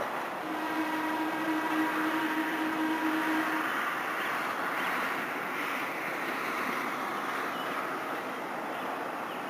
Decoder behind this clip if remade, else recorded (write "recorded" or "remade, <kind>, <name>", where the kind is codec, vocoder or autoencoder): recorded